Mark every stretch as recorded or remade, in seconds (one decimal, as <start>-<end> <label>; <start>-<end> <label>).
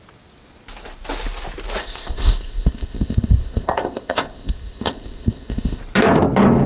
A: 0.0-1.8 recorded; 1.8-5.8 remade; 5.8-6.7 recorded